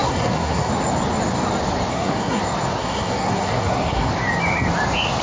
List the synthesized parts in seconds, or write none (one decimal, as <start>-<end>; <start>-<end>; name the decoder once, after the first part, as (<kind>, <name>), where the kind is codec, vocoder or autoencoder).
0.0-0.7 (codec, SNAC); 1.9-2.4; 2.8-4.1